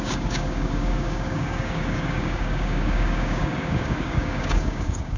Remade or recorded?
remade